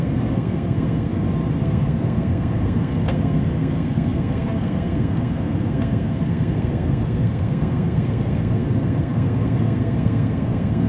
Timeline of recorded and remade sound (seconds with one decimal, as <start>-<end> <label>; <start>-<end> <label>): 0.0-1.1 remade; 1.1-1.6 recorded; 1.6-10.9 remade